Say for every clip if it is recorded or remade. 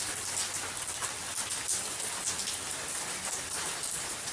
recorded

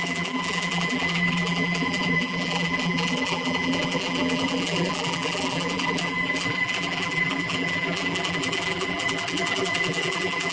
remade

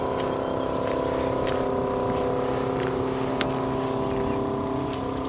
recorded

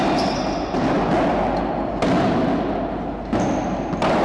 recorded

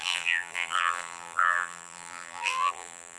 remade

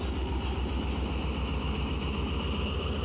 recorded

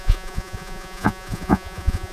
remade